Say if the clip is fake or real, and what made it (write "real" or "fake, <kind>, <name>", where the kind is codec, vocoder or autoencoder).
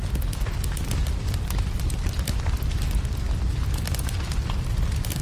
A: real